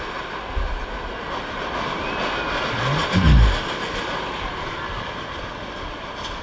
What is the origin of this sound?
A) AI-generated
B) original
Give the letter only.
B